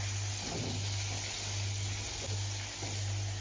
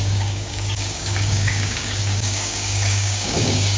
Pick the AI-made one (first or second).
second